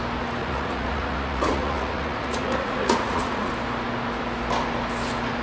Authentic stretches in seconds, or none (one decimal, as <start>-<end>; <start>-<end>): 0.0-0.4; 3.5-5.4